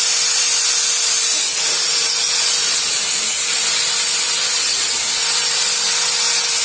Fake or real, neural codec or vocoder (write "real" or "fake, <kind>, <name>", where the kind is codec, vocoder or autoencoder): real